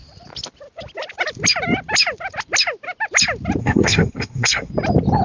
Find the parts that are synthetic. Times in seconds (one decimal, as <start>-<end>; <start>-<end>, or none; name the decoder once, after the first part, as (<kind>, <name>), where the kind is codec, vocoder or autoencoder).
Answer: 3.6-4.7 (codec, SNAC)